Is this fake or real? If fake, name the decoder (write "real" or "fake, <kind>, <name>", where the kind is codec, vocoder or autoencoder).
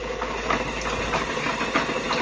real